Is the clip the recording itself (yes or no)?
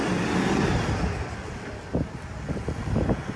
yes